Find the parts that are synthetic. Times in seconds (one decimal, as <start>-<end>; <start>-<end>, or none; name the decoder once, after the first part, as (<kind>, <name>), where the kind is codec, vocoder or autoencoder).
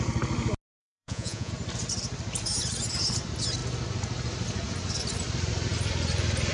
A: 0.8-1.5 (vocoder, Vocos)